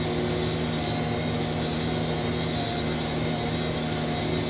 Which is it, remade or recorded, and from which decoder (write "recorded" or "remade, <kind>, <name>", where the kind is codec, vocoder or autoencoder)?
recorded